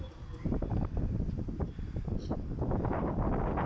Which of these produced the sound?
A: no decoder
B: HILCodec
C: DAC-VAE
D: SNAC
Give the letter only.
A